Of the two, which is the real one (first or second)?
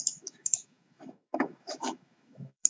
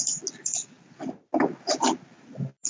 second